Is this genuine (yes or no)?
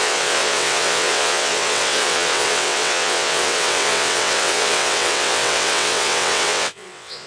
no